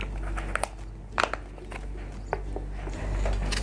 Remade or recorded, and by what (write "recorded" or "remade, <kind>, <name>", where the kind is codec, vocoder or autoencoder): recorded